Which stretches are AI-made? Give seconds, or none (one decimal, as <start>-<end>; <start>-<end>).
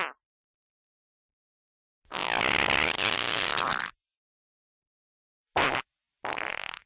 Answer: none